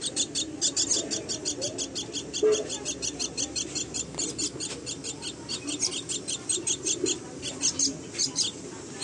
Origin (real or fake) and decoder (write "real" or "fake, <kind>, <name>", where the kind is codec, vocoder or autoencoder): real